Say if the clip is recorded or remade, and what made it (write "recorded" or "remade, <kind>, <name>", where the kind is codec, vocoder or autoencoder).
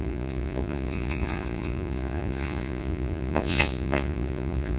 remade, vocoder, Vocos